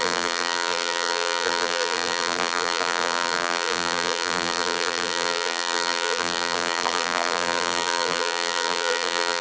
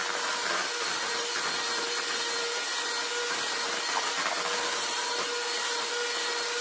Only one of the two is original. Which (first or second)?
second